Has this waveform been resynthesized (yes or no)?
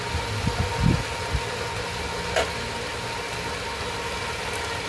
no